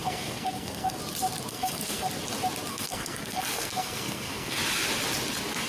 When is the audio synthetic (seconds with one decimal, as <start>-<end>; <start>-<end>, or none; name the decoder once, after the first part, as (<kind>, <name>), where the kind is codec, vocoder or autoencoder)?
0.0-1.0 (codec, SNAC); 1.5-2.1; 2.7-4.6